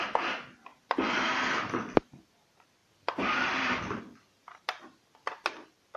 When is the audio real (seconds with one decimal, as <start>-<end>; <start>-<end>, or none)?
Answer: 0.0-2.8; 4.0-6.0